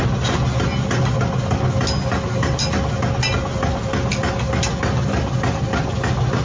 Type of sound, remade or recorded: recorded